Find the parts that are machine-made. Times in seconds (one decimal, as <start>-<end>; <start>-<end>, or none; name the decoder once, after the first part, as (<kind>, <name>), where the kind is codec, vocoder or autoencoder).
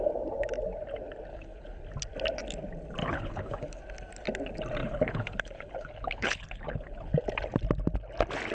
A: 1.3-1.8 (codec, HILCodec); 3.0-3.8; 4.8-7.1